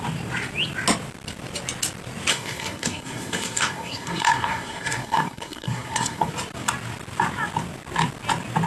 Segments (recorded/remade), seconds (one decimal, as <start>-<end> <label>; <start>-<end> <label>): 0.0-2.3 recorded; 2.3-6.3 remade; 6.3-8.7 recorded